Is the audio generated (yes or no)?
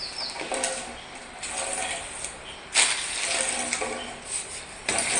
no